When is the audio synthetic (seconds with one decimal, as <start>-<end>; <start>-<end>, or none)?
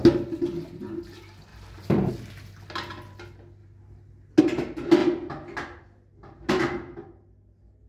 1.5-2.1